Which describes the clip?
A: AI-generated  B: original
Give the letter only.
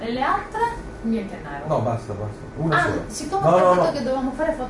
B